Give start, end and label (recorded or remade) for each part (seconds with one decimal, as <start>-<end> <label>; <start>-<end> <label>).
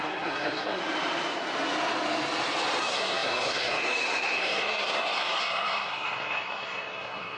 0.0-0.8 remade; 0.8-2.8 recorded; 2.8-7.4 remade